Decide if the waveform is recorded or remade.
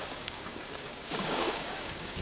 remade